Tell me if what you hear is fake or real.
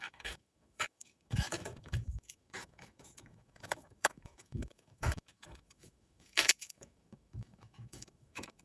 fake